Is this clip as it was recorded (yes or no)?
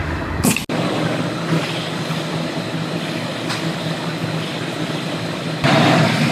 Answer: yes